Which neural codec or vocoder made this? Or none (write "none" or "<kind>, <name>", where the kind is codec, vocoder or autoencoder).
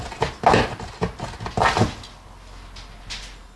none